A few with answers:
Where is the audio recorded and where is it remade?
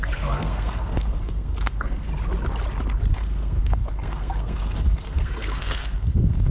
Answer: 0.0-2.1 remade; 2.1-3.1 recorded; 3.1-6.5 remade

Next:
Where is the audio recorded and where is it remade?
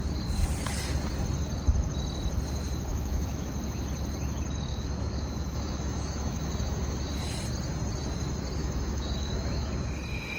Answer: 0.0-2.9 recorded; 2.9-3.5 remade; 3.5-4.7 recorded; 4.7-7.1 remade; 7.1-8.6 recorded; 8.6-10.0 remade; 10.0-10.4 recorded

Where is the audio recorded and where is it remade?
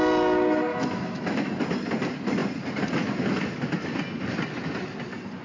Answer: 0.0-0.7 recorded; 0.7-1.5 remade; 1.5-5.4 recorded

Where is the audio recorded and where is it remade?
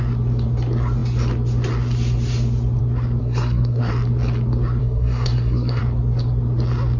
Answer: 0.0-3.2 recorded; 3.2-3.9 remade; 3.9-4.8 recorded; 4.8-5.8 remade; 5.8-7.0 recorded